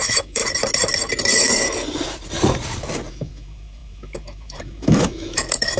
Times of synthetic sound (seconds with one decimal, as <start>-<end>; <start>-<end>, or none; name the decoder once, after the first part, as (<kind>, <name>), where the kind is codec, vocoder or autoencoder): 0.0-0.4 (autoencoder, DAC-VAE); 3.1-5.8